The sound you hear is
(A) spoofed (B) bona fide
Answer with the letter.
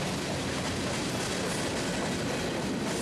B